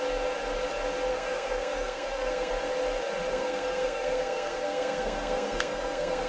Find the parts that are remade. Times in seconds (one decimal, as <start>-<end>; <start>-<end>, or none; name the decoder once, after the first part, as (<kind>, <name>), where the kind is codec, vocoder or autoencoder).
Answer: 1.1-2.5 (codec, SNAC); 3.3-6.3